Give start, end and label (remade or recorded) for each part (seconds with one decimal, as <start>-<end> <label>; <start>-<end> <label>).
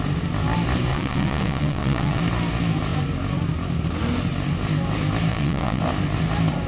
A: 0.0-0.9 recorded; 0.9-2.2 remade; 2.2-5.3 recorded; 5.3-5.8 remade; 5.8-6.7 recorded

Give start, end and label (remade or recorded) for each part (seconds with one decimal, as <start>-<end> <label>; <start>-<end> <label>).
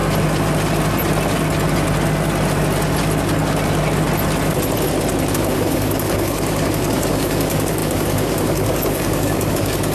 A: 0.0-5.3 recorded; 5.3-9.9 remade